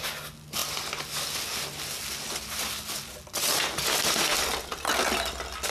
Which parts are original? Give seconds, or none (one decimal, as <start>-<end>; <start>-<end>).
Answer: 0.0-5.7